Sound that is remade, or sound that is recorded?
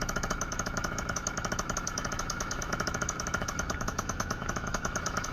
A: remade